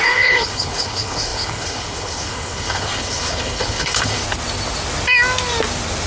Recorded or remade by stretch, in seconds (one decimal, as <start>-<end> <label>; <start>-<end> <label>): 0.0-4.2 remade; 4.2-6.1 recorded